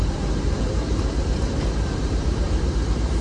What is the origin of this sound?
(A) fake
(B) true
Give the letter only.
A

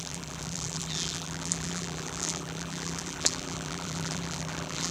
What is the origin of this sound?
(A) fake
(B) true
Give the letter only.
A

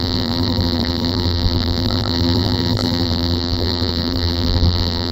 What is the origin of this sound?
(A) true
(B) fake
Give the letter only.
B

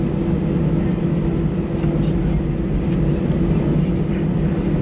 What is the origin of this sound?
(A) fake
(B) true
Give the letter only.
B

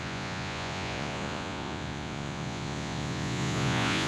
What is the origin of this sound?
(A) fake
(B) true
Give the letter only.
A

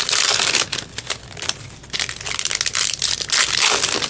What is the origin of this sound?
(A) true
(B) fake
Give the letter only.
A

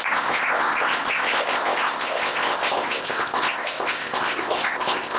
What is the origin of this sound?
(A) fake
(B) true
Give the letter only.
A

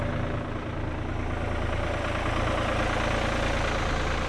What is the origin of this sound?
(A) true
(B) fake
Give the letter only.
A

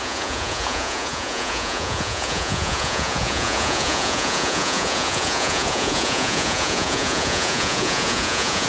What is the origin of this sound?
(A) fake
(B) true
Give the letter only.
A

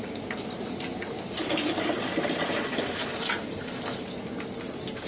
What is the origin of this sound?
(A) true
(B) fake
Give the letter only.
A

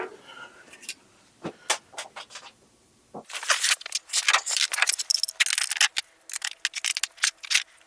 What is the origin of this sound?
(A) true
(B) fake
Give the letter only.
A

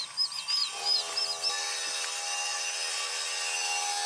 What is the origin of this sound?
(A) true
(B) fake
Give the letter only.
A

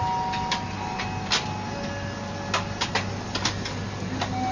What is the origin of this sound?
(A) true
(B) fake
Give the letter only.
A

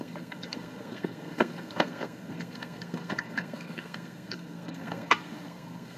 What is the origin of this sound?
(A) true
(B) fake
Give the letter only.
B